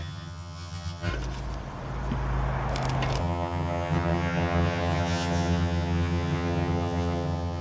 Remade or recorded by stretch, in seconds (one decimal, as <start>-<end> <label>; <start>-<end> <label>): 0.0-1.1 remade; 1.1-3.2 recorded; 3.2-7.6 remade